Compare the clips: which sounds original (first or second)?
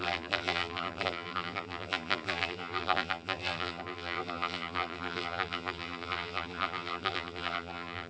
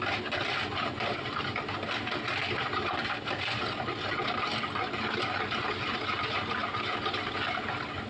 second